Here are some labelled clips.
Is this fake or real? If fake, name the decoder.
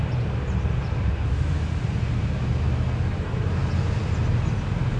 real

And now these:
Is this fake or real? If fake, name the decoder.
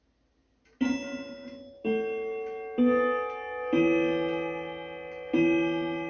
real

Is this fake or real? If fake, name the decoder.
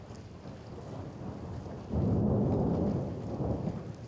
real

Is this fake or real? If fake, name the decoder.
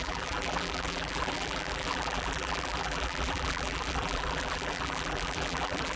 fake, vocoder, BigVGAN v2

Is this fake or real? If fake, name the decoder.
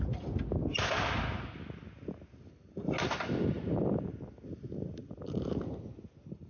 real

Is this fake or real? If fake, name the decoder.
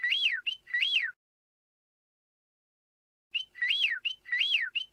real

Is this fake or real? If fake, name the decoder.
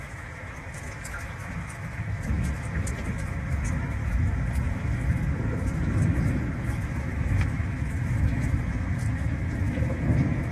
fake, autoencoder, DAC-VAE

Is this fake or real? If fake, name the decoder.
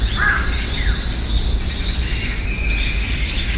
real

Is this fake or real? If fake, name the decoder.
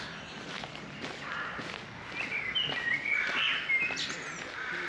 real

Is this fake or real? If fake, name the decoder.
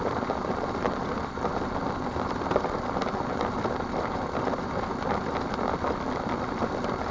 real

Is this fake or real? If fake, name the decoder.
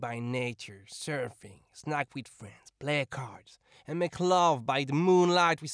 real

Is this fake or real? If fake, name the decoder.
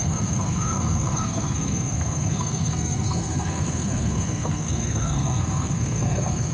fake, codec, SNAC